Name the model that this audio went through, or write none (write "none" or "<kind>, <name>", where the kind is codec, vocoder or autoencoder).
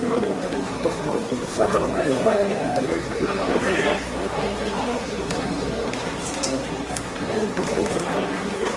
codec, SNAC